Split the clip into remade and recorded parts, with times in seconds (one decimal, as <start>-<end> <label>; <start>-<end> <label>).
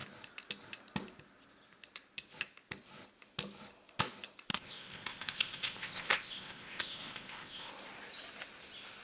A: 0.0-4.5 recorded; 4.5-7.7 remade; 7.7-9.0 recorded